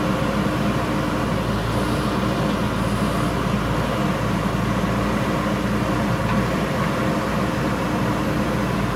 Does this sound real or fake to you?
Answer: real